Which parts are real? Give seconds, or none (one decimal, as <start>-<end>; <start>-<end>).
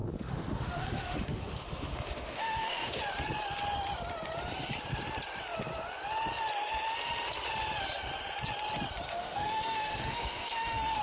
3.0-9.1